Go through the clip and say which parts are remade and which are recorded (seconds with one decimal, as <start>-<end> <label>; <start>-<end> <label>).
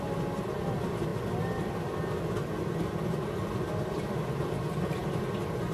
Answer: 0.0-5.7 recorded